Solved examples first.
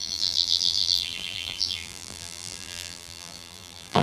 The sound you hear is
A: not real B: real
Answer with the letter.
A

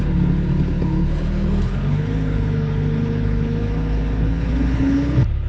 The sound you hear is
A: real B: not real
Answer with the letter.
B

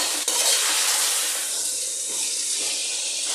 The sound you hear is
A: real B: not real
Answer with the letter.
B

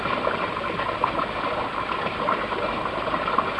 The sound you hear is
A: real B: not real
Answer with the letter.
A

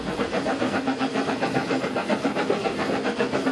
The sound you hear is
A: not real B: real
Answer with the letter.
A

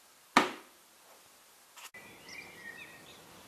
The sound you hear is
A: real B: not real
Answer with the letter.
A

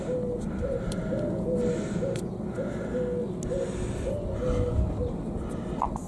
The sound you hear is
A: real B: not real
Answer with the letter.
A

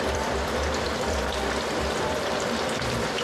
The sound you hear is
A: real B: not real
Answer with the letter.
B